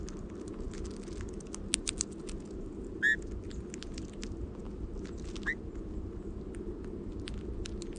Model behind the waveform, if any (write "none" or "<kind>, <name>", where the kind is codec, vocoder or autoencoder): none